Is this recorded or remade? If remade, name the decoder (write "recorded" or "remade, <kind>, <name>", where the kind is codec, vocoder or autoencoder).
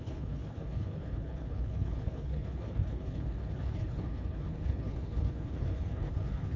remade, codec, HILCodec